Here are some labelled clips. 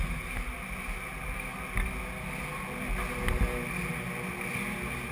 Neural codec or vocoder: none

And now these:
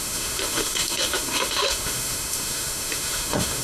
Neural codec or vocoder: autoencoder, DAC-VAE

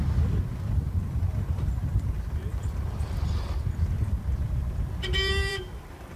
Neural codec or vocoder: vocoder, BigVGAN v2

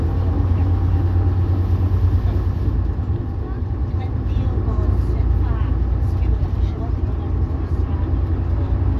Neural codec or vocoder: none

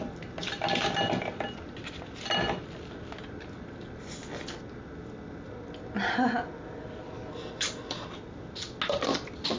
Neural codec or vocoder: none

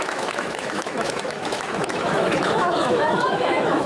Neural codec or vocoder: autoencoder, DAC-VAE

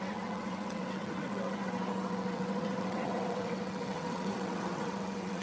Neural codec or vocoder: vocoder, WaveNeXt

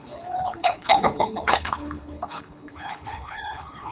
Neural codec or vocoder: codec, HILCodec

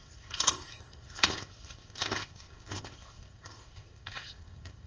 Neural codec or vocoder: codec, ZipCodec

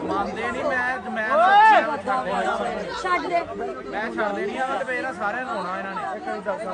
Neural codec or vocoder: none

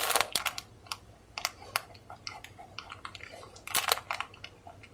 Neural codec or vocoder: none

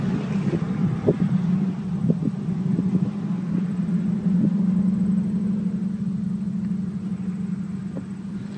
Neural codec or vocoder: none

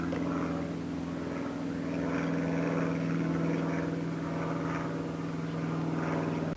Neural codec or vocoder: none